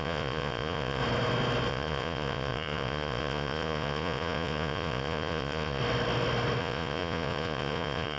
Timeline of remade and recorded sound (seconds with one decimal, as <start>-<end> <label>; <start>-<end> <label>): 0.0-1.0 remade; 1.0-1.7 recorded; 1.7-5.8 remade; 5.8-6.6 recorded; 6.6-8.2 remade